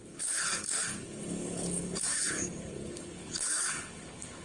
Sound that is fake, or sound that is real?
fake